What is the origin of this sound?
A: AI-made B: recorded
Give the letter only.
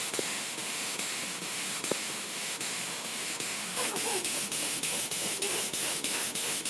A